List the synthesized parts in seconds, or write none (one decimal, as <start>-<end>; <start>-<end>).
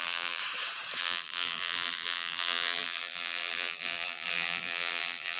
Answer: 0.0-0.4; 1.0-5.4